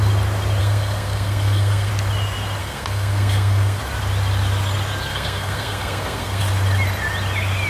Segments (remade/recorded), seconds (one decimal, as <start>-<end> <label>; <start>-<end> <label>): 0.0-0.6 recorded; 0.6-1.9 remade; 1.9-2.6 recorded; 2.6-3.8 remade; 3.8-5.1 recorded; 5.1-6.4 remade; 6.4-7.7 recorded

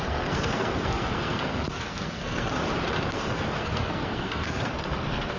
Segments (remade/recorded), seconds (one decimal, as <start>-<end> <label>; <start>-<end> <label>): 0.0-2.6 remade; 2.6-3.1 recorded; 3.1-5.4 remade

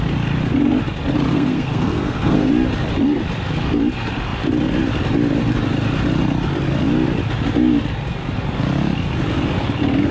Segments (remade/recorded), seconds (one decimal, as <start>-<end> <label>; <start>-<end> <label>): 0.0-1.3 recorded; 1.3-2.5 remade; 2.5-10.1 recorded